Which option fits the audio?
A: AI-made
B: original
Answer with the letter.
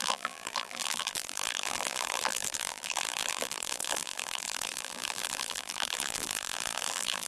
A